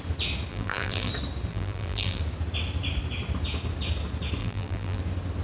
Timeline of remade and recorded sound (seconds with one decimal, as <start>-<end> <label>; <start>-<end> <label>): 0.0-0.5 recorded; 0.5-1.1 remade; 1.1-1.5 recorded; 1.5-2.2 remade; 2.2-4.4 recorded; 4.4-5.0 remade; 5.0-5.4 recorded